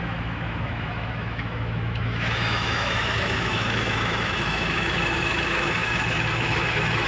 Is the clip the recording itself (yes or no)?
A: no